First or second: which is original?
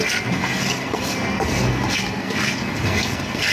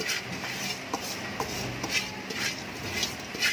second